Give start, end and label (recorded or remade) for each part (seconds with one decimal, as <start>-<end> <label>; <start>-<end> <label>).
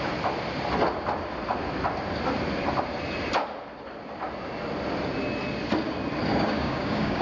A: 0.0-6.3 recorded; 6.3-7.2 remade